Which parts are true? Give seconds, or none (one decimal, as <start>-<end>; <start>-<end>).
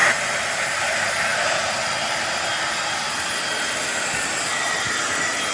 0.0-0.8